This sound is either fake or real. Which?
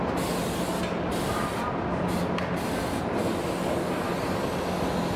real